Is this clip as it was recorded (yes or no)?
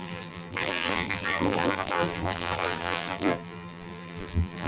no